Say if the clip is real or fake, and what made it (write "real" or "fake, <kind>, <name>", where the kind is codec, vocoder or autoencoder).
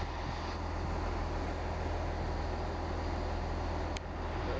real